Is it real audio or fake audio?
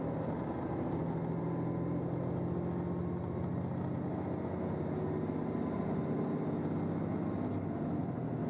real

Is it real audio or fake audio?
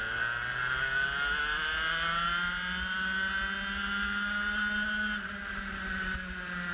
real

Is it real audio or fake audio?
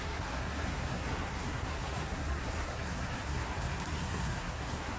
fake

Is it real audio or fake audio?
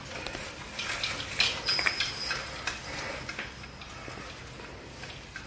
real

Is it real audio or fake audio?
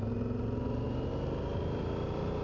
real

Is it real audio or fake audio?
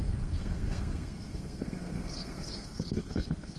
fake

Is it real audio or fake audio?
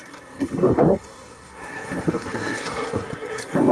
fake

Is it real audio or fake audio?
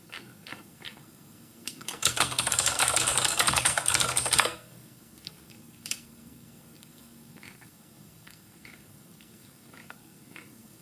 fake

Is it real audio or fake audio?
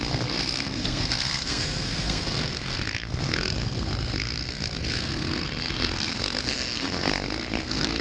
fake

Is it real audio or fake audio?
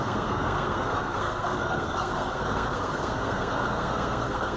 fake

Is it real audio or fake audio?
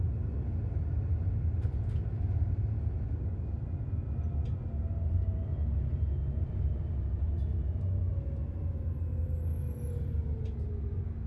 real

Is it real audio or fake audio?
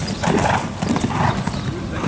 real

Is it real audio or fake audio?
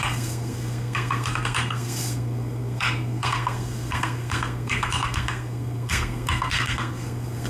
fake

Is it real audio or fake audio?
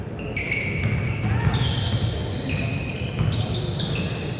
real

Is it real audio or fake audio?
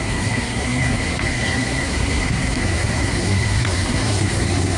fake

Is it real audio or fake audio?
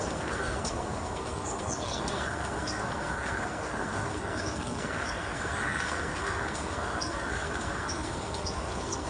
fake